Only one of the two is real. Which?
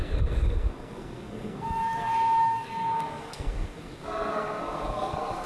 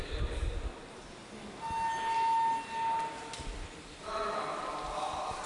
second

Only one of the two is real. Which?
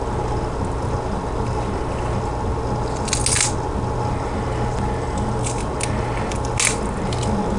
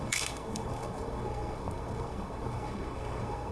first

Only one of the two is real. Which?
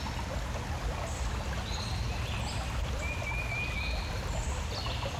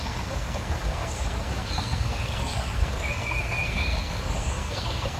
first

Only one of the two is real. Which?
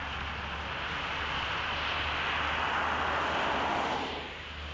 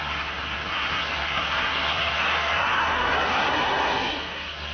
first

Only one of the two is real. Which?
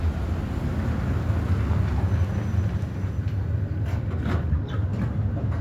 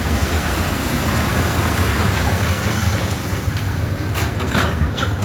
first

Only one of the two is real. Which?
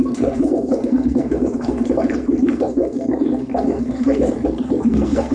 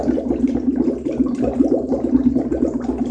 second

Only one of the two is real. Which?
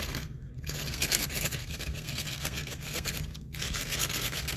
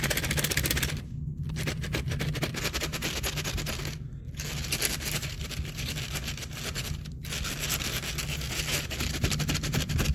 second